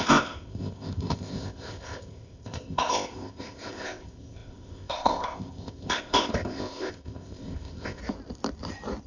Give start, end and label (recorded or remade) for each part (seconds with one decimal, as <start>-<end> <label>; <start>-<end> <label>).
0.0-8.0 remade; 8.0-9.1 recorded